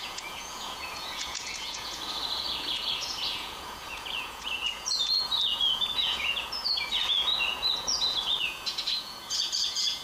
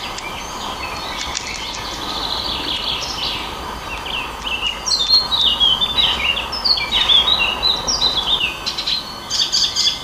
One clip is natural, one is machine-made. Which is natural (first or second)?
second